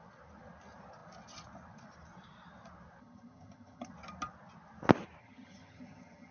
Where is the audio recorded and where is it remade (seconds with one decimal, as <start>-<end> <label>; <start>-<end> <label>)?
0.0-3.0 recorded; 3.0-3.9 remade; 3.9-5.2 recorded; 5.2-6.3 remade